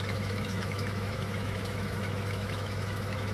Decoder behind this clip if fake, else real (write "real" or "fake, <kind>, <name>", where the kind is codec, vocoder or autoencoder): fake, autoencoder, DAC-VAE